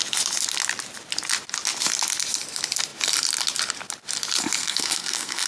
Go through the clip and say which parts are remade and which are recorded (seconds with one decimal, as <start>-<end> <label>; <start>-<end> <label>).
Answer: 0.0-4.6 recorded; 4.6-5.5 remade